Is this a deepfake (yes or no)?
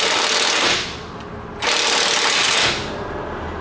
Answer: no